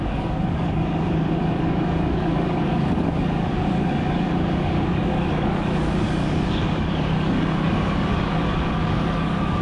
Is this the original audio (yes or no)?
no